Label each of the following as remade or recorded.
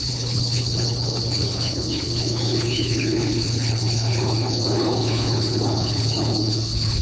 remade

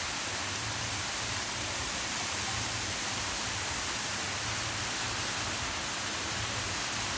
recorded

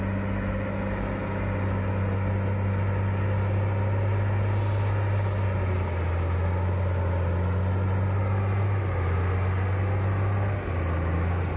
recorded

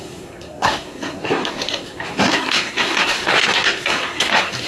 remade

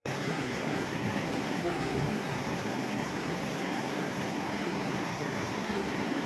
remade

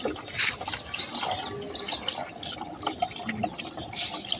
recorded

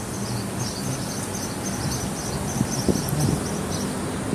recorded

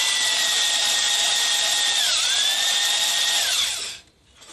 remade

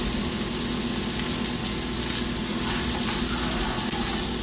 recorded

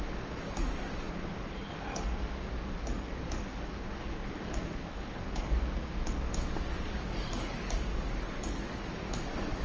remade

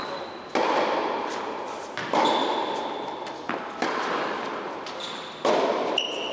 remade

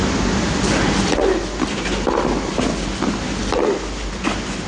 recorded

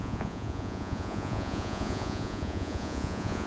remade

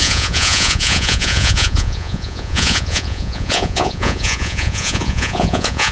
remade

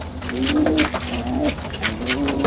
recorded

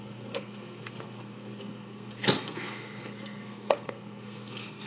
remade